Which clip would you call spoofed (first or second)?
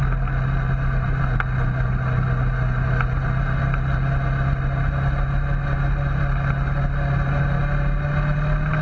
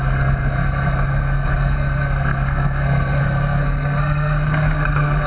second